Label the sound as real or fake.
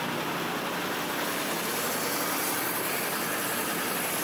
real